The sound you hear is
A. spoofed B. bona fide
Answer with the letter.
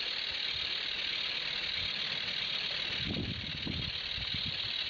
B